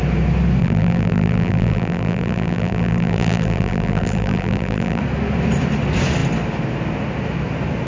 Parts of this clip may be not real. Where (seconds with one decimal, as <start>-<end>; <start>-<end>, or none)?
0.6-5.0